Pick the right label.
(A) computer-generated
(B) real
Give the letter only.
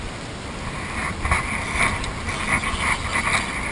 B